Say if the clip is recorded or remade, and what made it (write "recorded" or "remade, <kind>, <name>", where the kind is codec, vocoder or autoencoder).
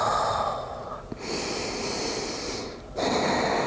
recorded